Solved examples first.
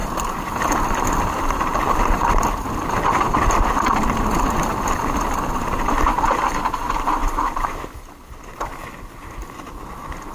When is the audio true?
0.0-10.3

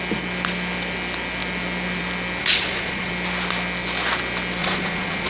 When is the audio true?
0.0-2.4; 3.1-4.6